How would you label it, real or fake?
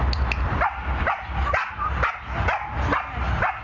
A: real